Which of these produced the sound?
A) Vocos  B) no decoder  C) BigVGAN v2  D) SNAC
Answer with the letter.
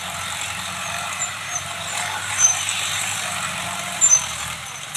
C